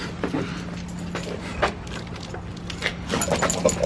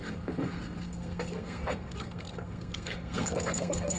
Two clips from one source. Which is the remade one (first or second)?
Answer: second